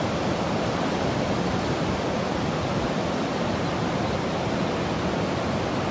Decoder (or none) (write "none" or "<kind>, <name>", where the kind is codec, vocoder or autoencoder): none